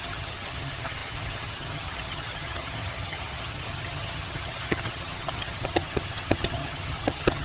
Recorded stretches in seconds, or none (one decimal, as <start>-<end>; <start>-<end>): none